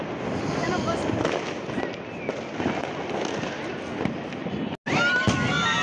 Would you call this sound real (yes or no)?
yes